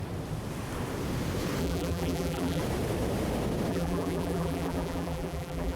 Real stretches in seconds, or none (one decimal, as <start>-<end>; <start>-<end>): 0.0-1.6; 2.6-3.7